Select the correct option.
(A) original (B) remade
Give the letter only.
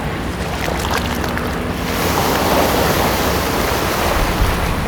A